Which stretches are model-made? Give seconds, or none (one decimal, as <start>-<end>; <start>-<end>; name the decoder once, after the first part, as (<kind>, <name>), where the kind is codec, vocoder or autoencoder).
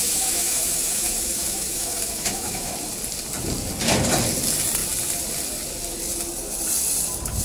0.0-2.7 (autoencoder, DAC-VAE)